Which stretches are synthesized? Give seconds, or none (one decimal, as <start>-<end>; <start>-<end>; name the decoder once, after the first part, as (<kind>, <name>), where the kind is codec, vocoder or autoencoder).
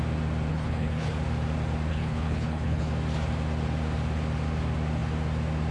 0.5-1.1 (codec, HILCodec); 1.9-2.9